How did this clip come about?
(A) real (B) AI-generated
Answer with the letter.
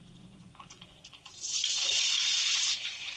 B